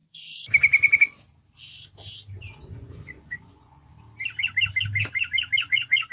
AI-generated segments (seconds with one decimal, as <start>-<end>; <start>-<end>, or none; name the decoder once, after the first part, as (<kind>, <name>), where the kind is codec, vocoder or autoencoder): 2.5-3.9 (vocoder, Vocos); 5.6-6.1